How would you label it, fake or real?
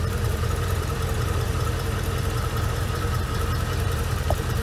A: fake